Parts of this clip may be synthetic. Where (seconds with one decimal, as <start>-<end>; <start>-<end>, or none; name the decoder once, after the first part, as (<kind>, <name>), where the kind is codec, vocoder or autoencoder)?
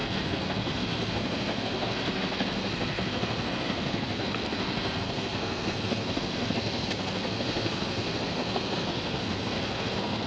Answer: 0.0-10.3 (codec, SNAC)